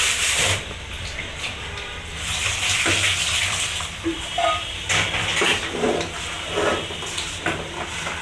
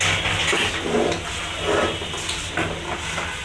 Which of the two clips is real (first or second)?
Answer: second